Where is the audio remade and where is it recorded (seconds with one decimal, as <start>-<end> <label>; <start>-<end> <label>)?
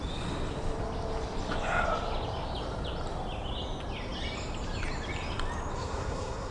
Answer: 0.0-5.7 recorded; 5.7-6.5 remade